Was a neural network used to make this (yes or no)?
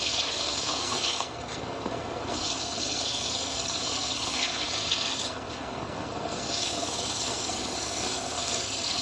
yes